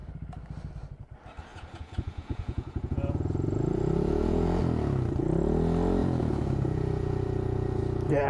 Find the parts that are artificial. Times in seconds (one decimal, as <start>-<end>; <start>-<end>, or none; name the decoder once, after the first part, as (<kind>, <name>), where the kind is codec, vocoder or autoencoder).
1.5-4.6 (vocoder, Vocos); 6.0-7.8